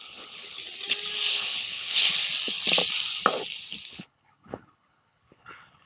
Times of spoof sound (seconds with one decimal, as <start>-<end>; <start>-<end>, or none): 0.0-0.6; 1.3-2.2; 3.9-5.9